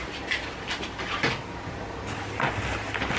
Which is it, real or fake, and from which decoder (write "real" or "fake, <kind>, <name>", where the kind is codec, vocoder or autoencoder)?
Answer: real